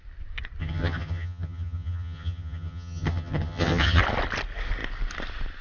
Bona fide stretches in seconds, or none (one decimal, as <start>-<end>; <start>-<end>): 0.0-0.6; 4.0-5.6